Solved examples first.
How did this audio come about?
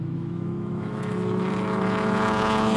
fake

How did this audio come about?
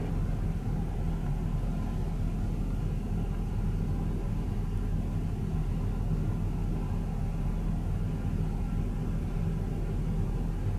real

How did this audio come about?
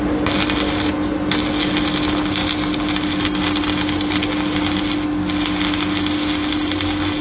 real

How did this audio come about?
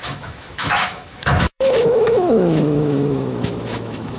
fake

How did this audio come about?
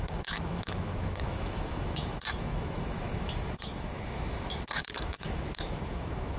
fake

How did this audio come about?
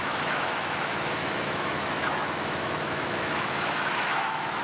fake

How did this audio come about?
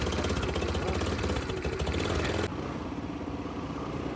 real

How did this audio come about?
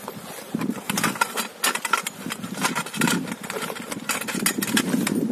real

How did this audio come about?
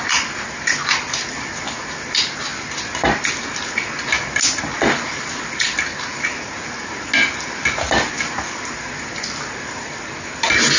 real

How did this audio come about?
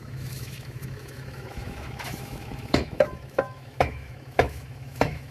fake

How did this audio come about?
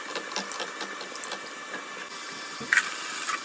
real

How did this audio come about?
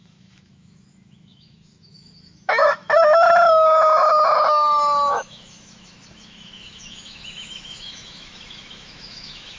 fake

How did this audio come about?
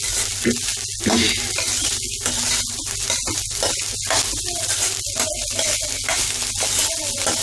real